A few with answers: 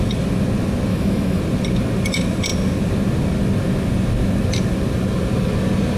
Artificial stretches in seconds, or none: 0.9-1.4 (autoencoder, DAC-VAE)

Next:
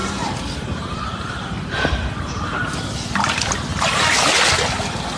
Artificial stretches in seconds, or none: 0.0-2.3 (vocoder, BigVGAN v2)

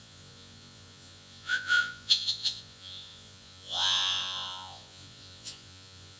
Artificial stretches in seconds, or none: 0.0-6.2 (vocoder, Vocos)

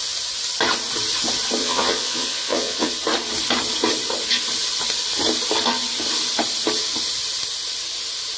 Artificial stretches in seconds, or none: 1.6-2.9 (vocoder, Vocos)